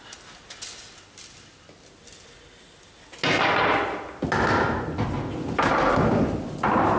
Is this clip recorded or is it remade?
recorded